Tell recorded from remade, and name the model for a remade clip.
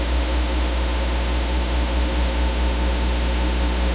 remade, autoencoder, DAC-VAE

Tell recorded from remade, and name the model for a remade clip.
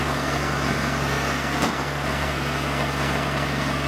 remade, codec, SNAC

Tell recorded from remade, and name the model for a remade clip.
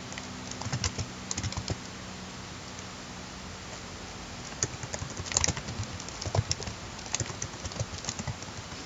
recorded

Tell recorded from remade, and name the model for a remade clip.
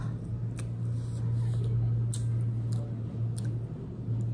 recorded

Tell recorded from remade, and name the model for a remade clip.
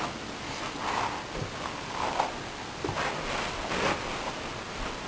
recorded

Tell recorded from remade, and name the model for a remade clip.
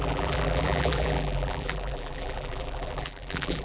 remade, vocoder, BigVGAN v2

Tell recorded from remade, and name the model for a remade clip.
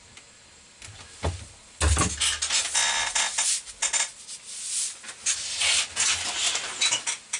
recorded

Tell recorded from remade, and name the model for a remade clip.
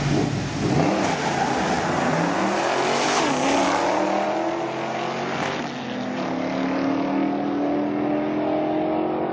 recorded